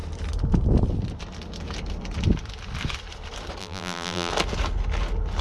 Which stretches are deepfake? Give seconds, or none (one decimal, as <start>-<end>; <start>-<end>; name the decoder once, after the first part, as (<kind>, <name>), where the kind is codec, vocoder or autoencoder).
3.6-4.3 (vocoder, BigVGAN v2)